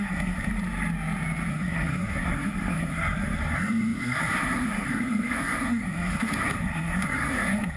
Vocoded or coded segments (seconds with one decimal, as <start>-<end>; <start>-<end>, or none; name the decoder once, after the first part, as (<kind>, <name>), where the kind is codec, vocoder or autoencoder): 0.0-0.5 (codec, SNAC); 1.5-7.8